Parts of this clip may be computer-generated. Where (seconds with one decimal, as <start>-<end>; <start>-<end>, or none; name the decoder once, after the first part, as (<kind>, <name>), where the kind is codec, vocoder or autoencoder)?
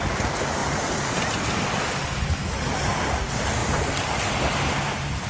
none